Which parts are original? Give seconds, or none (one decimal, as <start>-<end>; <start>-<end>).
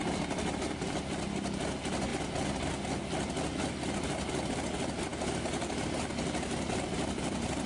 0.0-7.7